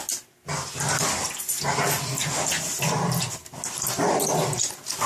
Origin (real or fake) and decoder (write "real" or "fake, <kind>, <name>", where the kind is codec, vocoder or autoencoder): real